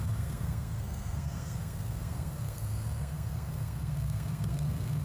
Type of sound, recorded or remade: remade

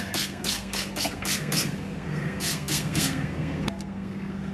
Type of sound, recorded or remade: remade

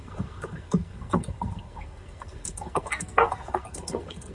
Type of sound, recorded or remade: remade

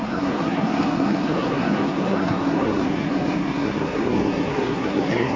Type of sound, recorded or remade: remade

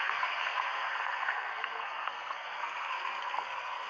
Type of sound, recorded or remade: remade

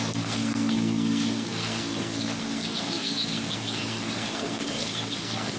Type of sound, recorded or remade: remade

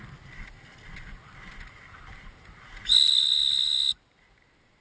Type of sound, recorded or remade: recorded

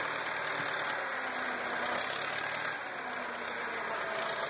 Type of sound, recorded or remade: recorded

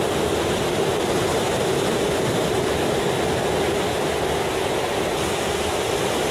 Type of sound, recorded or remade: recorded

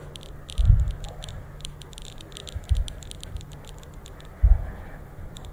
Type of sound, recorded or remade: recorded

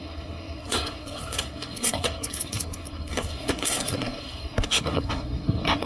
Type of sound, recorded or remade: remade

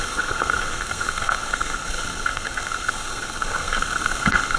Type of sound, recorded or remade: remade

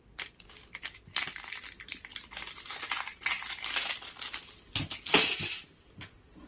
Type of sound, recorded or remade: recorded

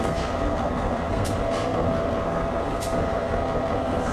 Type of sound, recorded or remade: remade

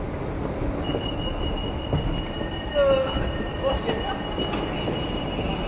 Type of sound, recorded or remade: recorded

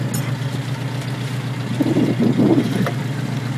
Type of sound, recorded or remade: recorded